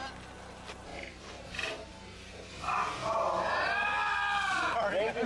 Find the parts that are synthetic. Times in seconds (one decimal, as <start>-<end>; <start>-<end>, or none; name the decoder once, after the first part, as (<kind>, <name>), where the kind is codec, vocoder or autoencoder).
1.9-5.3 (vocoder, BigVGAN v2)